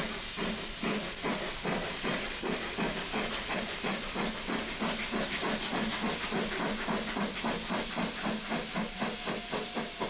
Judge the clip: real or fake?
real